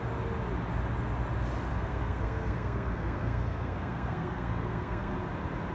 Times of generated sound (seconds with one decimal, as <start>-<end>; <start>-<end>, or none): 1.7-5.1